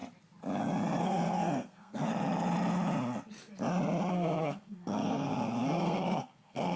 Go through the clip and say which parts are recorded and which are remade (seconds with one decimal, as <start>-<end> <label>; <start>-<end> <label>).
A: 0.0-1.0 recorded; 1.0-2.1 remade; 2.1-4.1 recorded; 4.1-6.8 remade